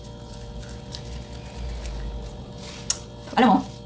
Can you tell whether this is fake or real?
real